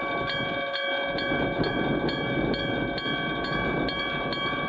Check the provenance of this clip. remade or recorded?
recorded